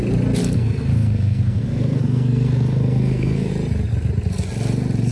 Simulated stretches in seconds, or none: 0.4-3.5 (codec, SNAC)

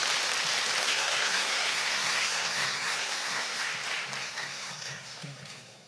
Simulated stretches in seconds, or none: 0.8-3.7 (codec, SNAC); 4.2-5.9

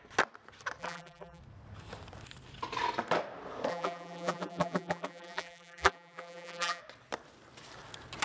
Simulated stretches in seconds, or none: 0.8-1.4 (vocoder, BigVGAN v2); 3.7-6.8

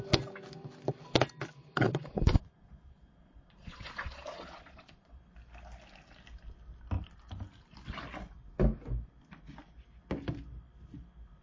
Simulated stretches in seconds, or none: 1.7-5.2 (vocoder, Vocos)